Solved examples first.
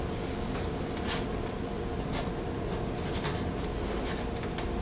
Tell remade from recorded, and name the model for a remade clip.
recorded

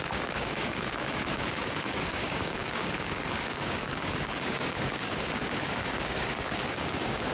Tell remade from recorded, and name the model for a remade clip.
remade, codec, DAC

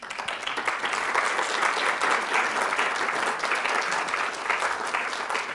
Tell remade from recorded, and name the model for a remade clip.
recorded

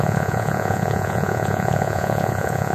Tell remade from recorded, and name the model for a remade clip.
remade, vocoder, Vocos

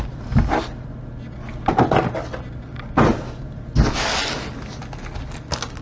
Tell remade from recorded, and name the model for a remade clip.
recorded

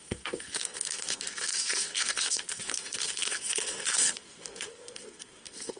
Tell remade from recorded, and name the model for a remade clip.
remade, codec, SNAC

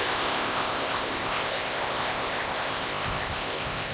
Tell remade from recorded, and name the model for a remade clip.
remade, codec, ZipCodec